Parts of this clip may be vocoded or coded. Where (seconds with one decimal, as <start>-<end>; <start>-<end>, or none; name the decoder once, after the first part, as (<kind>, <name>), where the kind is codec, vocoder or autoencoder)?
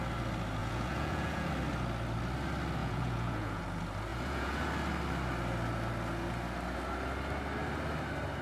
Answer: 0.6-1.5 (vocoder, Vocos); 2.8-3.6; 4.1-4.7